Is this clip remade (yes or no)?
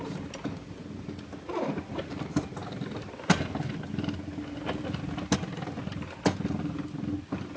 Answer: no